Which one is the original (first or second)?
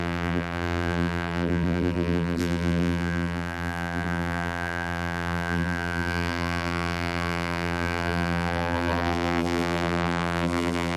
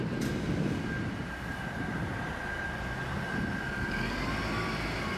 second